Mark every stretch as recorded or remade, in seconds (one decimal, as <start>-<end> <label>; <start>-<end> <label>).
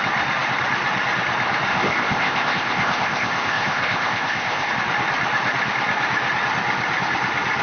0.0-1.7 recorded; 1.7-4.7 remade; 4.7-7.6 recorded